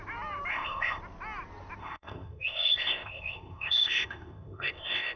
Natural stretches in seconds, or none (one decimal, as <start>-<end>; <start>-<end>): 0.0-0.5; 1.0-1.8